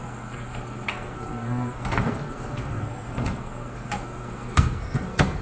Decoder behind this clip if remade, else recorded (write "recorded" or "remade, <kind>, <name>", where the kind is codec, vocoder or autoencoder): remade, codec, SNAC